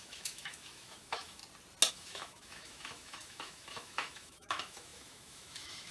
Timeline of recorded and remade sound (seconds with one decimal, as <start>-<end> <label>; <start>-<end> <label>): 0.0-1.4 remade; 1.4-1.9 recorded; 1.9-5.9 remade